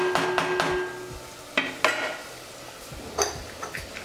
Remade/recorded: recorded